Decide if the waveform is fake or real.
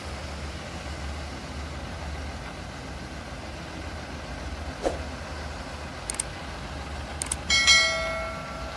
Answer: real